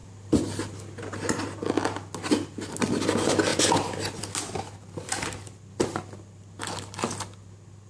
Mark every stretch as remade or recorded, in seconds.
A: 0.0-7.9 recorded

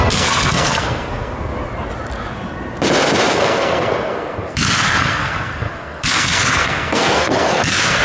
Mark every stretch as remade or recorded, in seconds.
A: 0.0-1.5 remade; 1.5-3.3 recorded; 3.3-8.0 remade

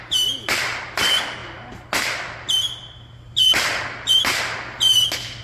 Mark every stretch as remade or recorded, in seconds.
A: 0.0-5.4 recorded

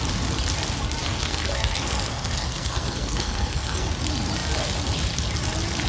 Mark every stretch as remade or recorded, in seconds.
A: 0.0-1.0 recorded; 1.0-3.9 remade; 3.9-5.9 recorded

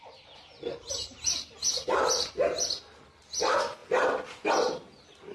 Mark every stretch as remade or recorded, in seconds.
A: 0.0-5.3 recorded

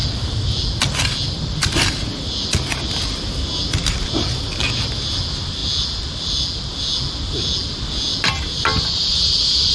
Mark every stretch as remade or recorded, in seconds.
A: 0.0-9.7 recorded

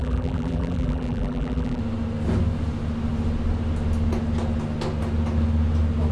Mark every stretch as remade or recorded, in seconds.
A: 0.0-1.8 remade; 1.8-6.1 recorded